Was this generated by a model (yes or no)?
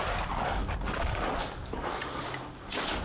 no